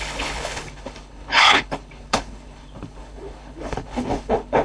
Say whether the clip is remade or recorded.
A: remade